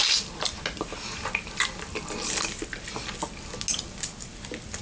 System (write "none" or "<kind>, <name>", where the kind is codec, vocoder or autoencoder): none